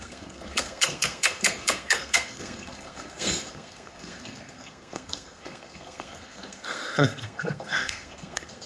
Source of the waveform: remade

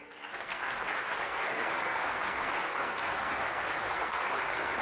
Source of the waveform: remade